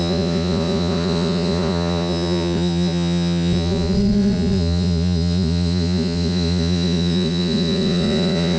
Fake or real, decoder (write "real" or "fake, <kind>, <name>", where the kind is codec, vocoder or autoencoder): fake, vocoder, Vocos